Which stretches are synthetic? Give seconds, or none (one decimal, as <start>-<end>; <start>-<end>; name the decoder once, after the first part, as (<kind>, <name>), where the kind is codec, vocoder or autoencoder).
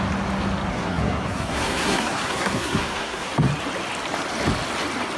0.7-3.3 (codec, SNAC)